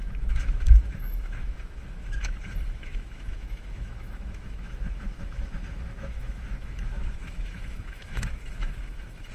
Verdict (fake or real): fake